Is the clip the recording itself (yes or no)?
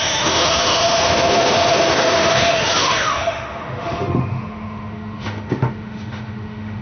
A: no